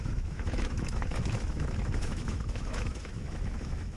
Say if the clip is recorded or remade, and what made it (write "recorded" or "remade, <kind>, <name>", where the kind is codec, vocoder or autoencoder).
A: remade, autoencoder, DAC-VAE